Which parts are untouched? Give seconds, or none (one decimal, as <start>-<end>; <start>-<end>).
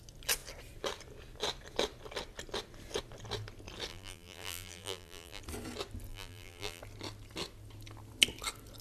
0.0-3.9; 5.4-6.1; 6.8-8.8